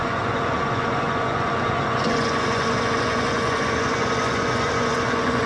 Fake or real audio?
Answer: fake